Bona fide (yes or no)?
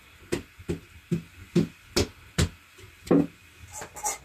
yes